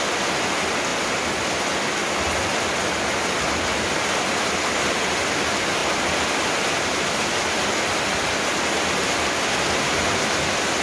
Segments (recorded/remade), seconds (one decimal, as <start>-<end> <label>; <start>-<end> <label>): 0.0-10.8 recorded